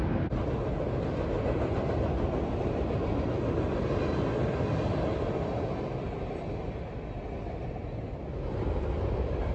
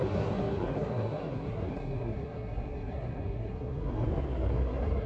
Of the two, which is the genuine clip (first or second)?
first